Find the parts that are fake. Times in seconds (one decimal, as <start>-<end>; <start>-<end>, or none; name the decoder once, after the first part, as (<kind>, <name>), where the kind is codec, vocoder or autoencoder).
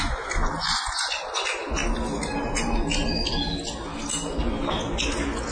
none